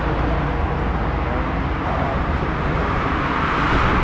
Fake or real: real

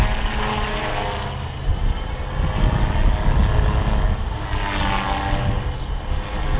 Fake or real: real